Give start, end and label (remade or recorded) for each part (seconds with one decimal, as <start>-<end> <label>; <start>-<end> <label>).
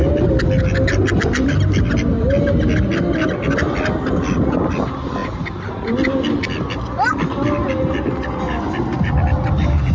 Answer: 0.0-9.9 recorded